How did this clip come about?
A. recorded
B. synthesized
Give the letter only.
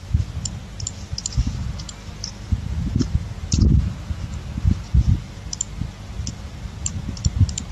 A